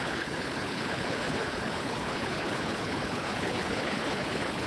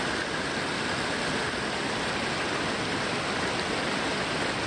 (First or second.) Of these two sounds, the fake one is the first